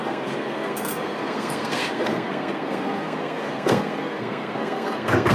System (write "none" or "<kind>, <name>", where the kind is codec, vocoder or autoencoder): codec, SNAC